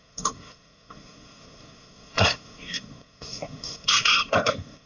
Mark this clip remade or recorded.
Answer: remade